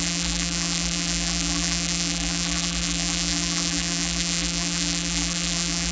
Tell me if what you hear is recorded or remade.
remade